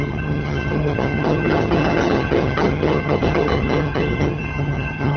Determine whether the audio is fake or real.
fake